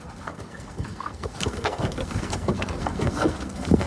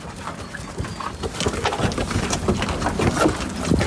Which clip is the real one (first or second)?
second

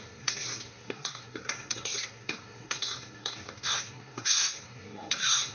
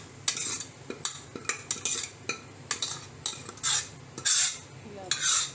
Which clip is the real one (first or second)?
second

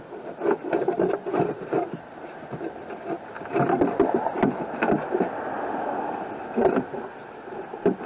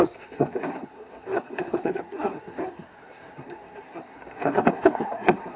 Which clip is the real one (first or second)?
first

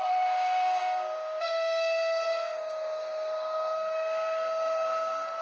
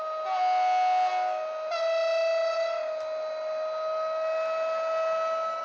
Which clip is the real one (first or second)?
second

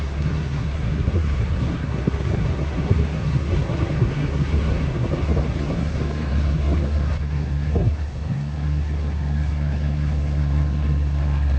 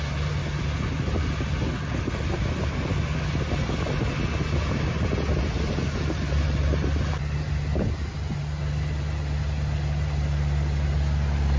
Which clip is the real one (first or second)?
second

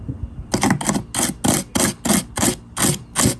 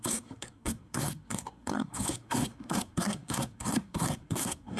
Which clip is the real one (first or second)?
first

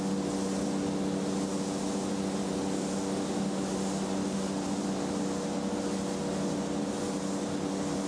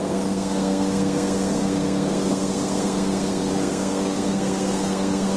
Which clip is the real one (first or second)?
first